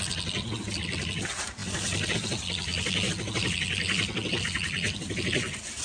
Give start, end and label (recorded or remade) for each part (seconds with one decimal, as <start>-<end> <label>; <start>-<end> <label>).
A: 0.0-5.8 recorded

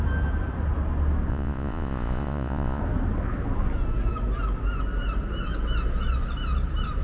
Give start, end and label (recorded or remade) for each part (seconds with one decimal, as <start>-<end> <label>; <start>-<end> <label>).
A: 0.0-1.3 recorded; 1.3-2.8 remade; 2.8-7.0 recorded

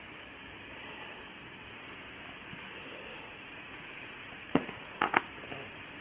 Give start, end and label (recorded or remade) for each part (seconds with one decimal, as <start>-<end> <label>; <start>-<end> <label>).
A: 0.0-3.1 recorded; 3.1-5.2 remade; 5.2-6.0 recorded

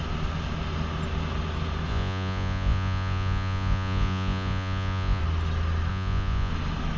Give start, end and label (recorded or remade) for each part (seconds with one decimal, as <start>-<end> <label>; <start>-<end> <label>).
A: 0.0-1.9 recorded; 1.9-5.2 remade; 5.2-5.9 recorded; 5.9-6.5 remade; 6.5-7.0 recorded

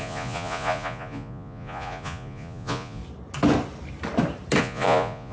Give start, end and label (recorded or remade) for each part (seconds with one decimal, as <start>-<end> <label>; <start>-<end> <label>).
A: 0.0-3.0 remade; 3.0-4.6 recorded; 4.6-5.3 remade

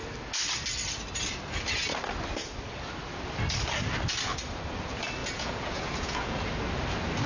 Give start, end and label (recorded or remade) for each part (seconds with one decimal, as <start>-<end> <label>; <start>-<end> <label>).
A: 0.0-5.2 recorded; 5.2-6.5 remade; 6.5-7.3 recorded

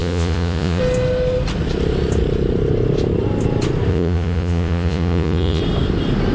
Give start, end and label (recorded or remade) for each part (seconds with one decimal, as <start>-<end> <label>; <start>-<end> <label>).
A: 0.0-0.8 remade; 0.8-3.9 recorded; 3.9-5.6 remade; 5.6-6.3 recorded

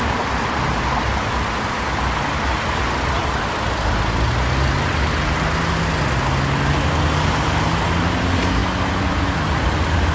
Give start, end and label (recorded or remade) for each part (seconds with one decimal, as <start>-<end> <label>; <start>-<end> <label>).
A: 0.0-10.1 recorded